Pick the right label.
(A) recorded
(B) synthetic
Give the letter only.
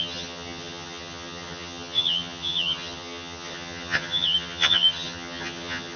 B